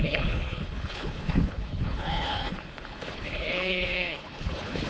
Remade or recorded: remade